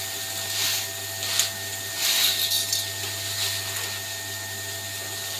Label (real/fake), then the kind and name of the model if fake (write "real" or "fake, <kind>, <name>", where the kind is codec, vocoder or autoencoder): real